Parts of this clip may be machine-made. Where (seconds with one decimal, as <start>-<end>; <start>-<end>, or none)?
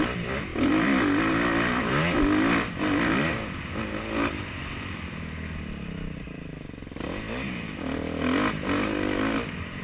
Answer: none